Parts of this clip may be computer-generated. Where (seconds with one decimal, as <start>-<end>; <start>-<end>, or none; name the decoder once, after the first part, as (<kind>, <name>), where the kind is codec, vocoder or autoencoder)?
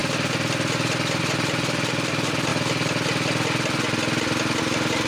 1.2-2.5 (vocoder, BigVGAN v2); 4.6-5.1